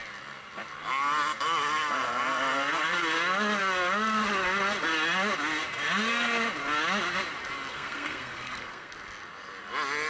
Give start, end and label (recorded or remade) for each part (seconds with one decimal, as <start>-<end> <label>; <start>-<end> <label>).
0.0-7.7 recorded; 7.7-8.9 remade; 8.9-10.1 recorded